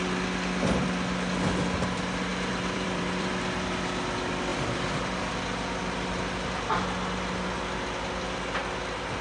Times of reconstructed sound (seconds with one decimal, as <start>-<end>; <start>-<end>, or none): 2.3-3.3; 4.5-5.3